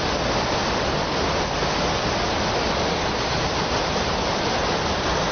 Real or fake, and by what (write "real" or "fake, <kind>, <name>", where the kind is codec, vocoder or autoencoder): real